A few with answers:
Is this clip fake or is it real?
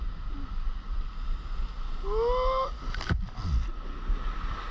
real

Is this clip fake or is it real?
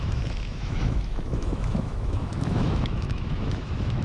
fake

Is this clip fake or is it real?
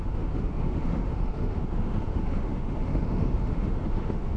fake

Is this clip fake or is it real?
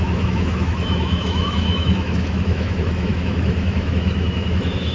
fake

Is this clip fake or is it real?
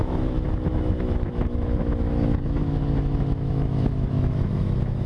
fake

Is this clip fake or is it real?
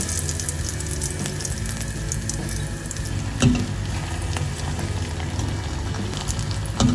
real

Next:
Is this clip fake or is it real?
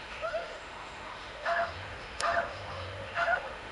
fake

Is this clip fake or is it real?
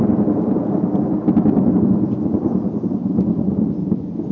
real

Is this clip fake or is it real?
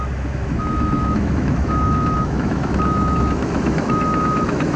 fake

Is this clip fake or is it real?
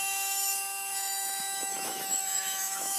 fake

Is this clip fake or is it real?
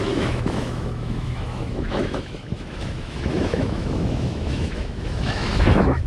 fake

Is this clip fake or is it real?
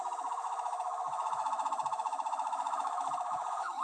fake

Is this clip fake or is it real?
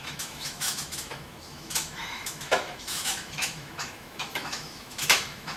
fake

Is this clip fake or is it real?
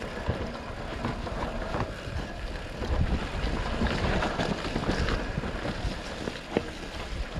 real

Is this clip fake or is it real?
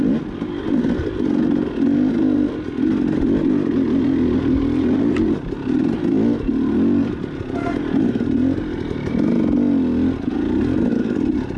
real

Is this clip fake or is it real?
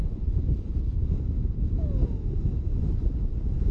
real